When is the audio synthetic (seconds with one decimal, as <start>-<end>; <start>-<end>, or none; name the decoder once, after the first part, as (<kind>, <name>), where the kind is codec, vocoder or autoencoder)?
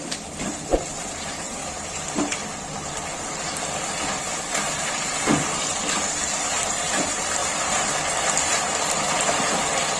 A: 0.0-1.6 (vocoder, BigVGAN v2); 4.2-10.0